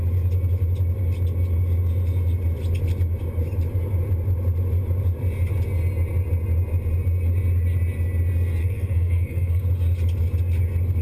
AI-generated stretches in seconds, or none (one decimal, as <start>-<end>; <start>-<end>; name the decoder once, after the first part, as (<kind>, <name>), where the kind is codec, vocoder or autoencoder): 8.6-9.6 (codec, SNAC)